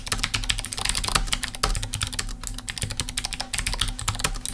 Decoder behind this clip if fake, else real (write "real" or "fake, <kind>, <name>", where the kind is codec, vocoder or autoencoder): real